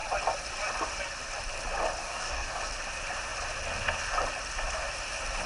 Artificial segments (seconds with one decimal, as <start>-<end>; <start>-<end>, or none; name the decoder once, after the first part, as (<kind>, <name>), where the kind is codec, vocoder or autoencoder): 2.0-2.6 (codec, DAC)

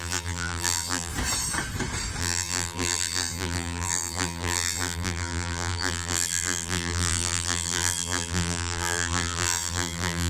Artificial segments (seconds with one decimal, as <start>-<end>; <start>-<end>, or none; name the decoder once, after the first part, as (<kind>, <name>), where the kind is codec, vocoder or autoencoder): 0.0-1.1 (vocoder, BigVGAN v2); 2.2-10.3

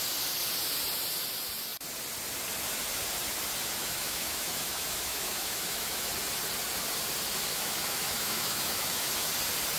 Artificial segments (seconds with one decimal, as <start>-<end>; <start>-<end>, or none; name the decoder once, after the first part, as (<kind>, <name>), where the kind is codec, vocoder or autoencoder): 3.8-6.1 (autoencoder, DAC-VAE); 7.5-9.3

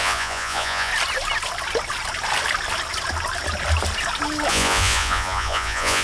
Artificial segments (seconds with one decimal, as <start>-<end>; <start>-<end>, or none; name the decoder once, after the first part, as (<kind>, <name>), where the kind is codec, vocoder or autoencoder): 0.0-0.9 (vocoder, Vocos); 4.5-6.0

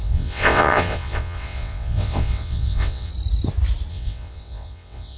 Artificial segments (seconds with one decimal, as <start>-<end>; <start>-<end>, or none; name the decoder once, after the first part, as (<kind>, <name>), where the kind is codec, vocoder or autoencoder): 0.0-3.1 (vocoder, WaveNeXt); 3.9-5.2

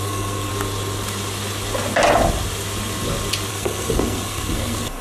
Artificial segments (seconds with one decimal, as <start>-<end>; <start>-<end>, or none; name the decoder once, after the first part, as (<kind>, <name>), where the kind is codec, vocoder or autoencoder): 0.0-0.5 (codec, SNAC); 3.5-5.0